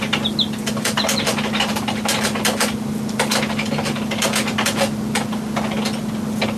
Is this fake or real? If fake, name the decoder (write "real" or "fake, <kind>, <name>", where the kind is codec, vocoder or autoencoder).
real